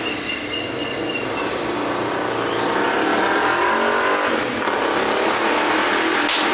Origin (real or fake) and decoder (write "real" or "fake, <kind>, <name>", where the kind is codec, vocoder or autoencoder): real